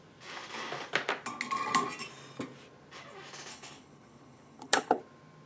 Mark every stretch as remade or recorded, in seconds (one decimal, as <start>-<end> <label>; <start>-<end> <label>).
0.0-3.5 recorded; 3.5-5.0 remade; 5.0-5.5 recorded